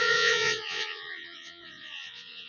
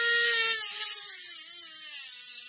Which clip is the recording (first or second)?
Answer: second